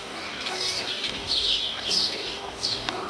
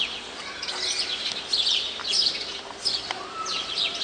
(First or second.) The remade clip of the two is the first